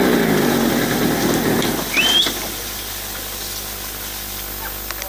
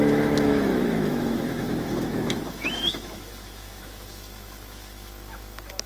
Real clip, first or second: first